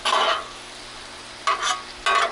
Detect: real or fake real